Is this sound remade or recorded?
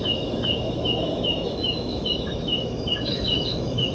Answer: remade